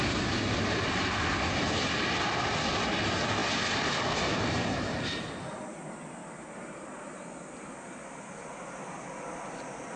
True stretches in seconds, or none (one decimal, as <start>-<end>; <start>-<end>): 0.0-6.2; 7.0-10.0